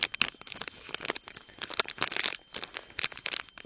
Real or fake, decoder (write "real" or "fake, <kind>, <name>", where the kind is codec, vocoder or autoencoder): real